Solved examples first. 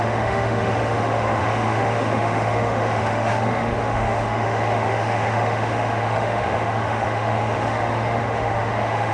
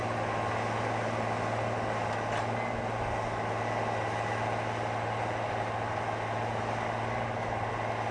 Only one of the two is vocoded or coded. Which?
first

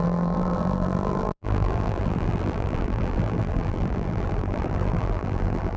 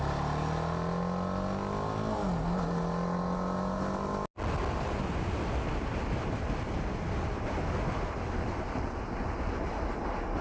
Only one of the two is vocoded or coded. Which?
first